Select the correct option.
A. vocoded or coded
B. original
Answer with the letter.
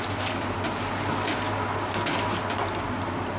B